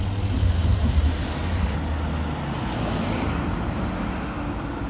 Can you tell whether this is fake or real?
real